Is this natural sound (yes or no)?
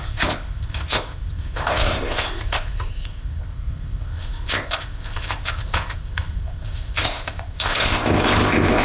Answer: no